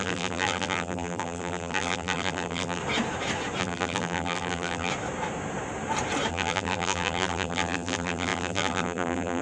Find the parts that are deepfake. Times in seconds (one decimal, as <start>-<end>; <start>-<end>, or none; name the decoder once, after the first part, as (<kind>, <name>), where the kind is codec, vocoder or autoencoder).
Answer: 0.0-2.8 (vocoder, BigVGAN v2); 3.6-4.9; 6.3-9.4

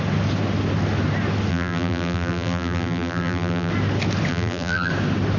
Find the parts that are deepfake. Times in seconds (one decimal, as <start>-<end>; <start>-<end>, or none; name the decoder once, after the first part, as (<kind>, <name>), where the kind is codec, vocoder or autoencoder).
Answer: 1.5-3.7 (vocoder, BigVGAN v2); 4.3-4.9

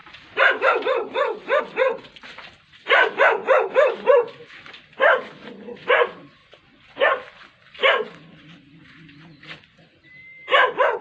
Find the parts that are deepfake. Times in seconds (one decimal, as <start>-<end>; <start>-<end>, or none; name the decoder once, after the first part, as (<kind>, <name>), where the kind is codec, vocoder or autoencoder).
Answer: 0.0-1.6 (vocoder, BigVGAN v2); 3.4-4.7

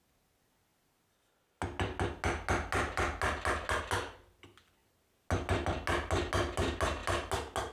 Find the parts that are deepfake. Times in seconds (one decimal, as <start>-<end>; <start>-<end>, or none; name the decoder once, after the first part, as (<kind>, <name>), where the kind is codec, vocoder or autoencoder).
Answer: none